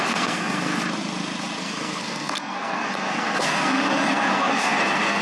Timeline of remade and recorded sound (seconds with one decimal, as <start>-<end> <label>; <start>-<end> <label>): 0.0-0.7 remade; 0.7-1.6 recorded; 1.6-5.2 remade